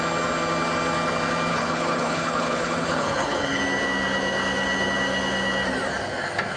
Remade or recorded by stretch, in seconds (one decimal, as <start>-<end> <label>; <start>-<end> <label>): 0.0-1.5 recorded; 1.5-3.6 remade; 3.6-6.6 recorded